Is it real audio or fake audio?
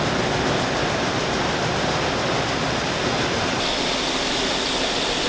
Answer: real